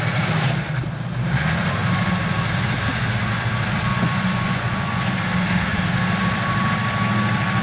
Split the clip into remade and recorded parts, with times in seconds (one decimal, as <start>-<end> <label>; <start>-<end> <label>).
0.0-3.9 recorded; 3.9-5.0 remade; 5.0-7.6 recorded